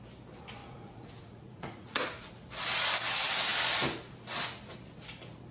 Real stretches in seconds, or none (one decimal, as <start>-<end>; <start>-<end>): 0.0-0.6; 2.3-5.5